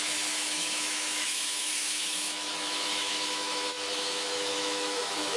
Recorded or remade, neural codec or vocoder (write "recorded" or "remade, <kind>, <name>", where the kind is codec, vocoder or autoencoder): remade, autoencoder, DAC-VAE